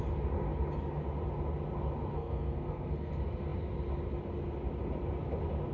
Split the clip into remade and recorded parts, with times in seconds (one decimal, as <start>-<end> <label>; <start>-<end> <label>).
0.0-2.1 recorded; 2.1-3.1 remade; 3.1-5.7 recorded